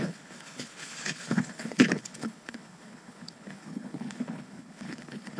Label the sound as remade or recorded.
remade